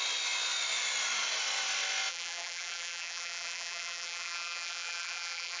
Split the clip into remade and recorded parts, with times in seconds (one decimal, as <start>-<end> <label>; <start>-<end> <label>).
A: 0.0-2.1 recorded; 2.1-5.6 remade